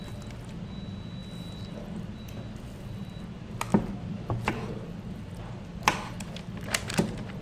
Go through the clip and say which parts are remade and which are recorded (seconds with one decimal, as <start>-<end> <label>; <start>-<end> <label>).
0.0-7.4 recorded